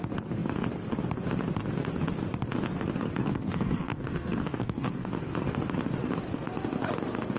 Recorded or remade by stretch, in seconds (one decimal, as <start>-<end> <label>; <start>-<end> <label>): 0.0-3.2 recorded; 3.2-5.1 remade; 5.1-7.4 recorded

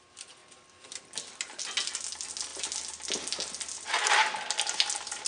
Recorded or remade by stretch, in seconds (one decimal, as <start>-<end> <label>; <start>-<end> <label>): 0.0-5.3 recorded